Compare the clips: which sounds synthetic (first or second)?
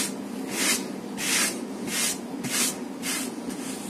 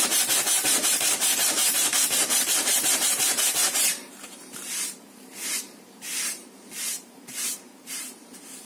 second